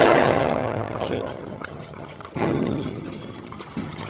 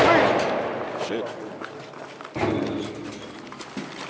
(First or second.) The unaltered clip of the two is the second